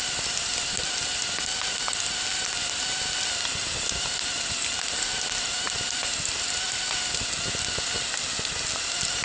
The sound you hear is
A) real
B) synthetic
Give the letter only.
B